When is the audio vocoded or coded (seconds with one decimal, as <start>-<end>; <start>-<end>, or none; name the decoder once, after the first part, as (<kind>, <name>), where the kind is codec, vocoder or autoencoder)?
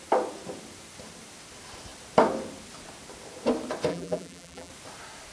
3.9-4.7 (vocoder, BigVGAN v2)